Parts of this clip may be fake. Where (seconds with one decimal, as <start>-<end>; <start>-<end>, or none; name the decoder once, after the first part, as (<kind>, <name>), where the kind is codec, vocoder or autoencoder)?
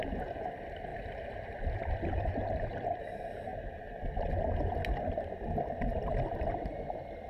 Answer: 0.9-3.0 (vocoder, BigVGAN v2)